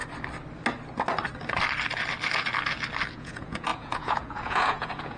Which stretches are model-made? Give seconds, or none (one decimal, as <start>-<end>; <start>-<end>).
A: 3.1-5.2